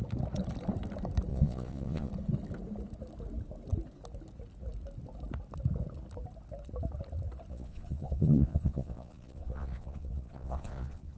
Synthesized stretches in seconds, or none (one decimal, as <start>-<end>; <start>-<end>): 1.3-2.1; 7.5-11.2